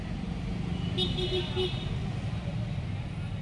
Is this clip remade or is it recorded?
recorded